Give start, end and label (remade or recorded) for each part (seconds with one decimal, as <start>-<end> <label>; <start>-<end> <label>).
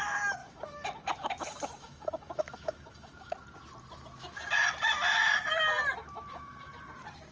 0.0-0.4 recorded; 0.4-3.3 remade; 3.3-6.0 recorded; 6.0-6.7 remade; 6.7-7.3 recorded